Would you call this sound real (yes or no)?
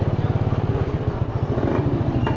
yes